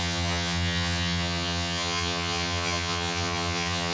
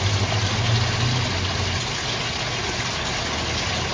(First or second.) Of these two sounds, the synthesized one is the first